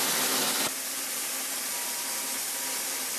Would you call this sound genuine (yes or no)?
yes